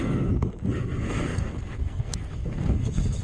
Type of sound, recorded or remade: remade